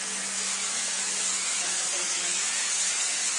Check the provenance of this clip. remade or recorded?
remade